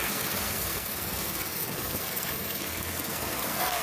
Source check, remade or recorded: remade